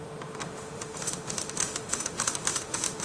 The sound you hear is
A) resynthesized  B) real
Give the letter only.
A